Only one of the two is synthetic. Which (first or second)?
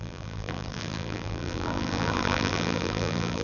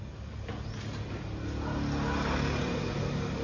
first